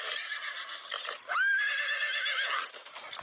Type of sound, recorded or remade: recorded